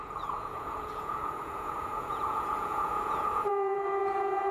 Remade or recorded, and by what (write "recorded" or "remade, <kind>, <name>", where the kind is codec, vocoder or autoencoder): remade, vocoder, Vocos